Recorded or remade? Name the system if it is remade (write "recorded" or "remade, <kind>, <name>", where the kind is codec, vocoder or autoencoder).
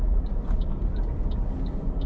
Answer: recorded